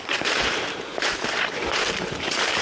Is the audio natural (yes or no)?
no